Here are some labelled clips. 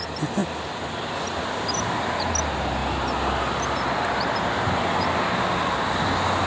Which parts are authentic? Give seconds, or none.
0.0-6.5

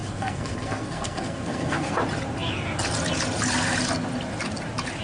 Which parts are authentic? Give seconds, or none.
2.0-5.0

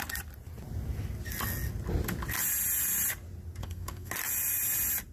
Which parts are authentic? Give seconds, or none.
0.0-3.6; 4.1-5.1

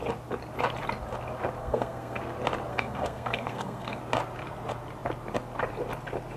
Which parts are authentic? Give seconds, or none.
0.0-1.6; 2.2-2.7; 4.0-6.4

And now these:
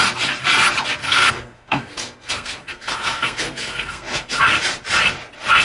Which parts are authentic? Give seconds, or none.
0.0-1.0; 4.4-5.6

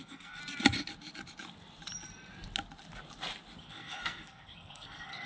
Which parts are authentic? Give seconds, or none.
0.4-3.6

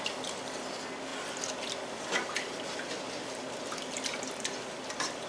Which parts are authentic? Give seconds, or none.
0.0-5.3

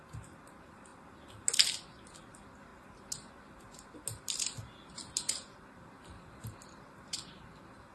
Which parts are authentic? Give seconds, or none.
0.0-7.9